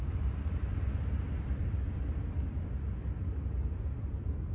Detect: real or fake real